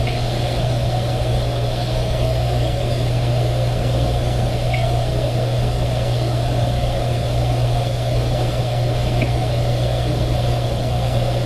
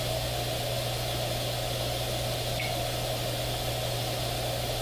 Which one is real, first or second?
second